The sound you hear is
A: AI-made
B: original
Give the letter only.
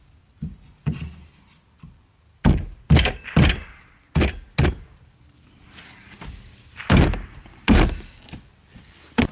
B